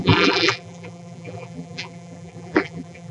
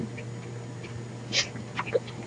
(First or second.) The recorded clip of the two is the second